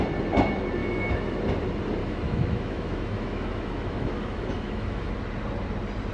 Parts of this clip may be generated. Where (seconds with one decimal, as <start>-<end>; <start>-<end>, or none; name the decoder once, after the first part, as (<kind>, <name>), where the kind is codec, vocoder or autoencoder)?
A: 0.8-1.4 (autoencoder, DAC-VAE); 2.0-5.1